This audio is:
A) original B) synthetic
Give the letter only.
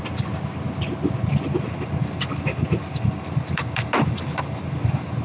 A